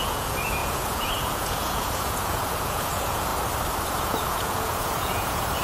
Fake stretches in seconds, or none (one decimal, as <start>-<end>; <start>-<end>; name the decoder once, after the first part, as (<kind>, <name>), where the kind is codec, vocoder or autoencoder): 0.0-3.3 (vocoder, Vocos); 3.9-5.6